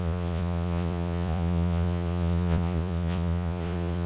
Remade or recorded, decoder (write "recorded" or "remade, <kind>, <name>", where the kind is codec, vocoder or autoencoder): remade, vocoder, Vocos